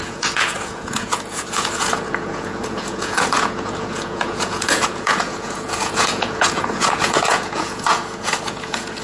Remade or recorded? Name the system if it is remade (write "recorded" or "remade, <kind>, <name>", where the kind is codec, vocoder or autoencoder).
remade, vocoder, Vocos